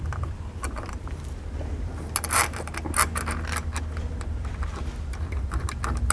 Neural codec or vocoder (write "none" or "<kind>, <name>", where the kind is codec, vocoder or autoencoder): none